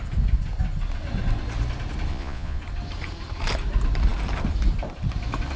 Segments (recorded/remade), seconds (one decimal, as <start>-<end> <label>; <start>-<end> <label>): 0.0-2.1 recorded; 2.1-2.6 remade; 2.6-5.6 recorded